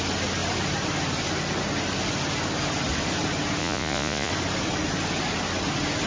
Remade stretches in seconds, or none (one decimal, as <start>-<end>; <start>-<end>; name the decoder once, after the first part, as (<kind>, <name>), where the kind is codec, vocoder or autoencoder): 3.6-4.3 (vocoder, Vocos)